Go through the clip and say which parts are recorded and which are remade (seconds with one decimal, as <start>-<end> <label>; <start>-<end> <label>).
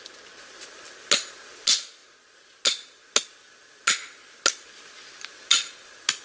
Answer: 0.0-6.2 recorded